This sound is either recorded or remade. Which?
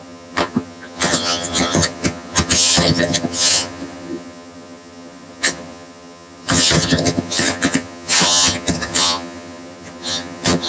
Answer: remade